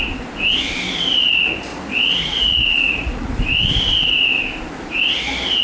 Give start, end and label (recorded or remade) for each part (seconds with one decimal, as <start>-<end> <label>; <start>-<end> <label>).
0.0-1.7 recorded; 1.7-3.3 remade; 3.3-5.6 recorded